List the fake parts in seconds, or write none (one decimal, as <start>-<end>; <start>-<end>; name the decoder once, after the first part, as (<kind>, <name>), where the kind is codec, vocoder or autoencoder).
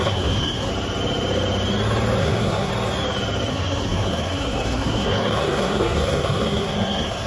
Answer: 0.0-0.7 (codec, SNAC); 2.2-2.7; 3.5-7.3